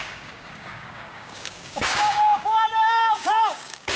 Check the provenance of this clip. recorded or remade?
remade